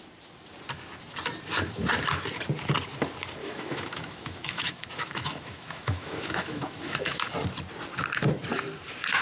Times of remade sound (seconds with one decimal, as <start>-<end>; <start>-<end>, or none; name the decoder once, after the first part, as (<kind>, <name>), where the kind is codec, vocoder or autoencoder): 3.4-7.3 (autoencoder, DAC-VAE)